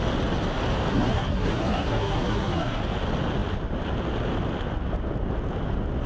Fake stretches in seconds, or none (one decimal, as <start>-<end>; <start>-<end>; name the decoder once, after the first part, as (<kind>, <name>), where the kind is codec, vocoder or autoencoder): 0.9-2.8 (codec, SNAC)